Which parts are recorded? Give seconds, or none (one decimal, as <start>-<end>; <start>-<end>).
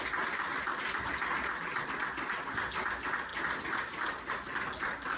0.0-5.2